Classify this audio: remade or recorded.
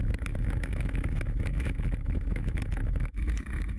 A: remade